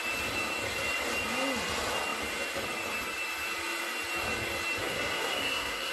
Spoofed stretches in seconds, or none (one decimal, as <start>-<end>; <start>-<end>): 4.8-5.9